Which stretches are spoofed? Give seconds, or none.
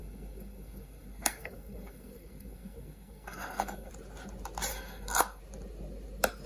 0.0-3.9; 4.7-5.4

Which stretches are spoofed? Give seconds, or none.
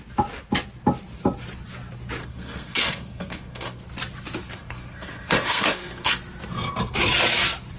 2.2-3.8; 4.4-6.2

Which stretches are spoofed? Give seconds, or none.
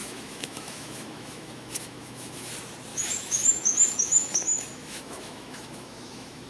0.0-2.5; 2.9-6.5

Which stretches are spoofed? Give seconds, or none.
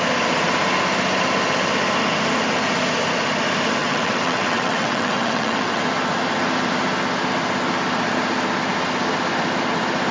3.8-5.8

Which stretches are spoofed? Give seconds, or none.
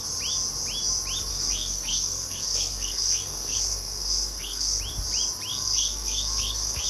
1.3-4.8; 5.5-6.9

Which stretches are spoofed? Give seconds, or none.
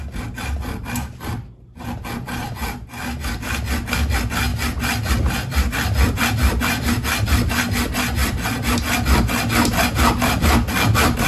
none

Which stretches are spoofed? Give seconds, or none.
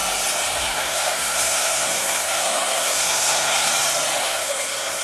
0.6-3.7; 4.2-5.0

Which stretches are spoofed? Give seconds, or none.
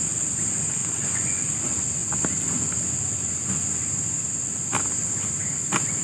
0.8-1.4